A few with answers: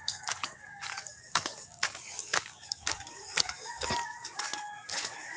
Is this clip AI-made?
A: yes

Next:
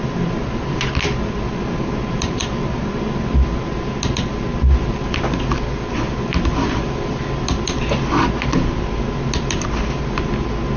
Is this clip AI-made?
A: no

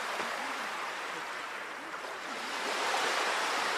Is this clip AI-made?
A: yes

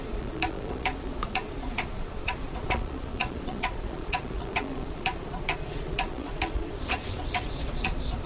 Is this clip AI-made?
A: yes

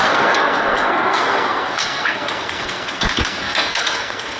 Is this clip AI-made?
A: yes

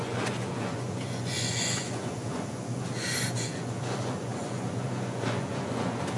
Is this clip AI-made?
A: yes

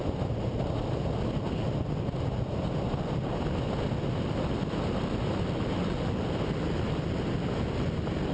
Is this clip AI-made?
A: no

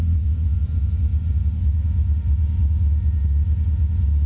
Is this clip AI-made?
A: no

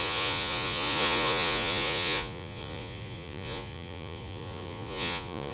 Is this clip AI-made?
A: yes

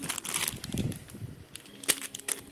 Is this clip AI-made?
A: no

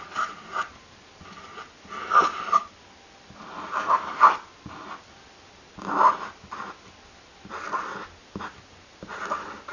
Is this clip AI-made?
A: no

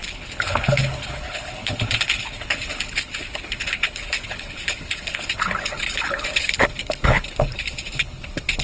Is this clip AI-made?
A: yes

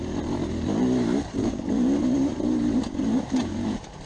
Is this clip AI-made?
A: yes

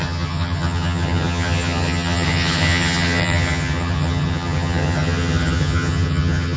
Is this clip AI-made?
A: yes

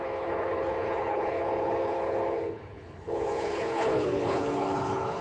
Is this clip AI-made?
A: yes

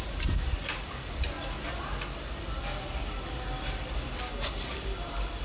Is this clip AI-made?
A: no